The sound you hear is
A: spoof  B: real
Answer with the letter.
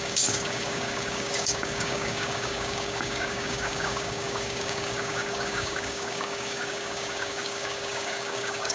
A